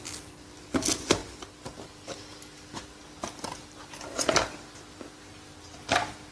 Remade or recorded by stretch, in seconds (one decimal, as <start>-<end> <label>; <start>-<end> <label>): 0.0-6.3 recorded